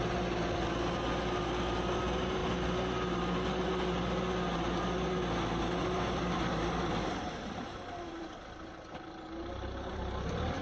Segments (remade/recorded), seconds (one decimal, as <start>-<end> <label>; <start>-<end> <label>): 0.0-5.8 recorded; 5.8-10.6 remade

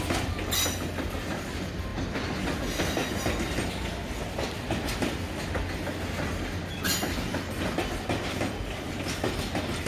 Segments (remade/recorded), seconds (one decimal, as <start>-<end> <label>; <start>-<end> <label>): 0.0-9.9 recorded